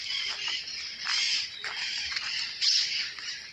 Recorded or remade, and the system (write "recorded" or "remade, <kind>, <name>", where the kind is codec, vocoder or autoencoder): recorded